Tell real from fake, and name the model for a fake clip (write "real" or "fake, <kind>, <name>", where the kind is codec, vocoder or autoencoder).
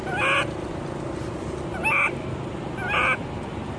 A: real